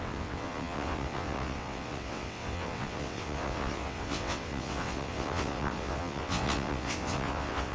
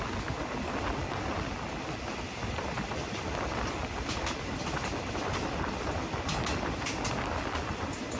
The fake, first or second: first